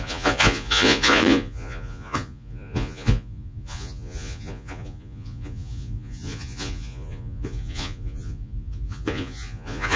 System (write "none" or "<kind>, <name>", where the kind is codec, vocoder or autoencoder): vocoder, Vocos